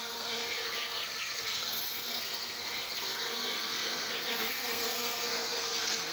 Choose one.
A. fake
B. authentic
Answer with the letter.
A